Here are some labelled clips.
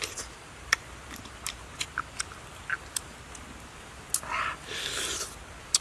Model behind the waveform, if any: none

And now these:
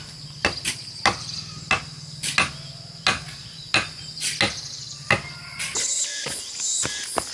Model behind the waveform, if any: none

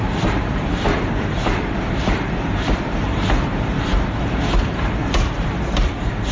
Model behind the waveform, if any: vocoder, BigVGAN v2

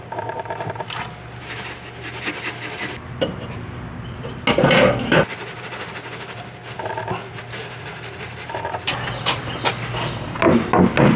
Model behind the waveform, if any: none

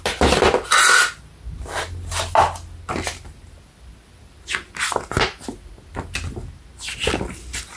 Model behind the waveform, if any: none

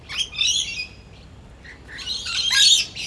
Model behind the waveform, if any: vocoder, BigVGAN v2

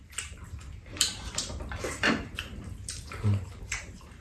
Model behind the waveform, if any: vocoder, BigVGAN v2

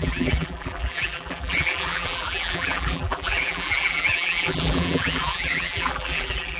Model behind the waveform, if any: vocoder, BigVGAN v2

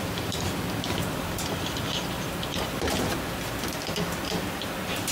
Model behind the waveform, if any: vocoder, BigVGAN v2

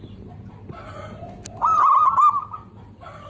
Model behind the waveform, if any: none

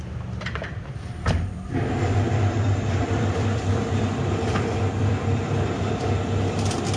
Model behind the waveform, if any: vocoder, BigVGAN v2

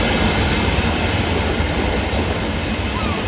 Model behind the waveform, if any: none